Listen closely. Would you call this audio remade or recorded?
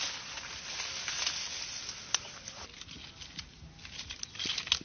recorded